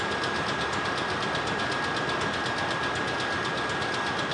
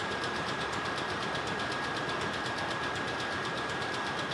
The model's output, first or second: second